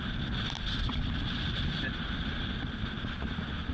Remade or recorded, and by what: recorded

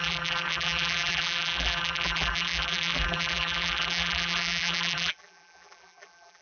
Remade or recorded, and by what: remade, vocoder, BigVGAN v2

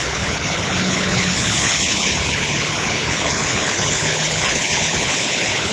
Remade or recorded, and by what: remade, codec, HILCodec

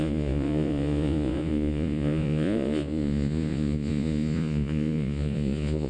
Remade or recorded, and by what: remade, vocoder, Vocos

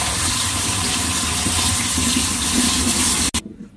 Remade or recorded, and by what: recorded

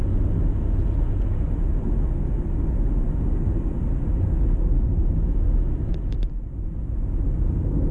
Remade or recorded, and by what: recorded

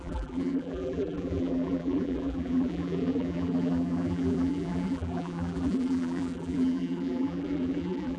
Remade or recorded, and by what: remade, vocoder, BigVGAN v2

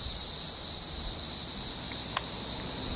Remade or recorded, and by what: recorded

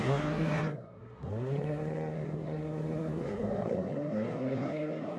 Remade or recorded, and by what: remade, codec, SNAC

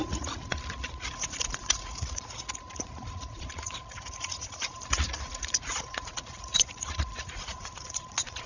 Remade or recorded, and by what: remade, vocoder, Vocos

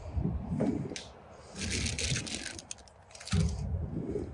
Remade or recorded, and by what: recorded